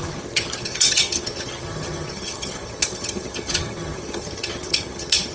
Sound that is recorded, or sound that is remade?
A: remade